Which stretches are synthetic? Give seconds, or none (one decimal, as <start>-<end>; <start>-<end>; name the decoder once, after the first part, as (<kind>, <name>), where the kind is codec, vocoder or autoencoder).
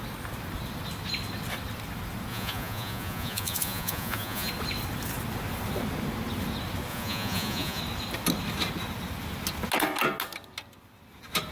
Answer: 2.3-4.5 (vocoder, Vocos); 6.9-7.8